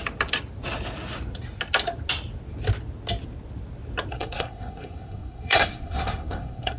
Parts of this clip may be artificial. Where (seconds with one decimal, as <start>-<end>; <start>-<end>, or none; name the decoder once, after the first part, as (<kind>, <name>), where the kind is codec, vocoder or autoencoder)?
4.1-6.8 (codec, SNAC)